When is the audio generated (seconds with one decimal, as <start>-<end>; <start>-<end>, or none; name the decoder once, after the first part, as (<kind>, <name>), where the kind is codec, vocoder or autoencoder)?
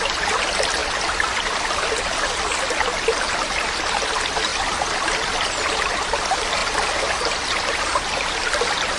4.5-5.5 (vocoder, BigVGAN v2); 6.6-7.1